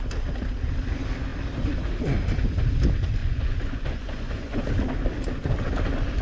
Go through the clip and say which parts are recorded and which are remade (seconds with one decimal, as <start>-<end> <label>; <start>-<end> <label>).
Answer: 0.0-3.2 recorded; 3.2-4.6 remade; 4.6-6.2 recorded